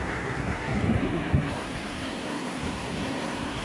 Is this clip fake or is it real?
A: fake